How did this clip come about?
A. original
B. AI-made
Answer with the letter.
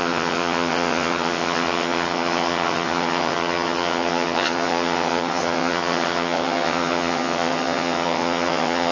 B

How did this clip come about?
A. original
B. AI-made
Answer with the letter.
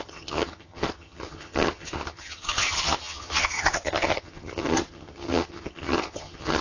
B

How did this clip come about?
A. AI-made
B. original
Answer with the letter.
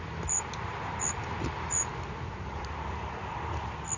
B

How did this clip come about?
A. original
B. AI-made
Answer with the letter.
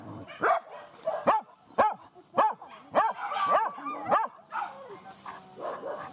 A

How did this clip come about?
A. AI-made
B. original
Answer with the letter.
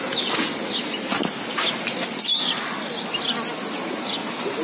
B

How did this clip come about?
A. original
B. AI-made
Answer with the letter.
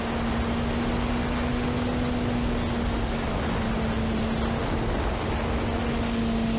A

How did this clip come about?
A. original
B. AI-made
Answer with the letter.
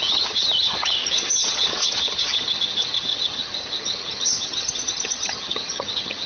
B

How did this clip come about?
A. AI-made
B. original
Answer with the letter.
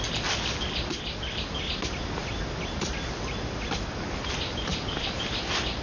B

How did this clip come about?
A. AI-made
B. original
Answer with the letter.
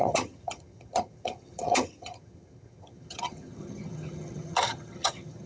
A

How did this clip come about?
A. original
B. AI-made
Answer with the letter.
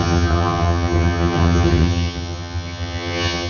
B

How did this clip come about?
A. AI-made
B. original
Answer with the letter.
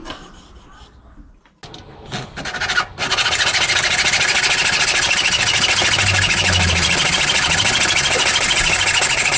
B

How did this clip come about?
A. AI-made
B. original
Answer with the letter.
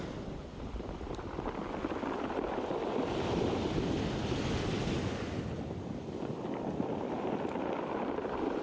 B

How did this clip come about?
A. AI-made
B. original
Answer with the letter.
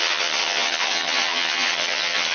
A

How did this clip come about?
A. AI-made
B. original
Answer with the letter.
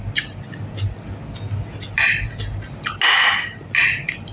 B